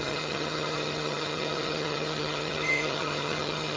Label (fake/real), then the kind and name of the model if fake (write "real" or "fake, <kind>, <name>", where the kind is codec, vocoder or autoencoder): fake, vocoder, HiFi-GAN